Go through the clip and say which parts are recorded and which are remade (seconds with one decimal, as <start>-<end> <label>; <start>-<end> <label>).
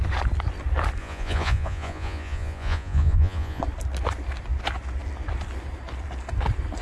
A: 0.0-1.0 recorded; 1.0-3.6 remade; 3.6-6.8 recorded